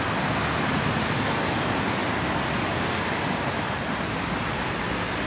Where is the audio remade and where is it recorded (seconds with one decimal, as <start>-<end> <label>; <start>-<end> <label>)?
0.0-5.3 recorded